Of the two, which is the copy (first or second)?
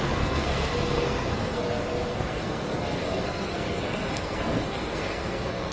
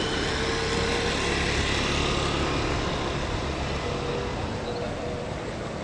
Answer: first